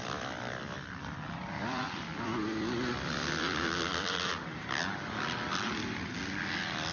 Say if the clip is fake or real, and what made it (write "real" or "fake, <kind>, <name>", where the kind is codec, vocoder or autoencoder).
fake, vocoder, BigVGAN v2